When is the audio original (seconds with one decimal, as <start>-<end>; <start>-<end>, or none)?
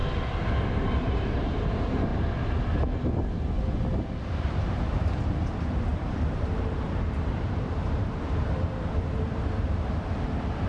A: 0.0-0.9; 2.1-4.2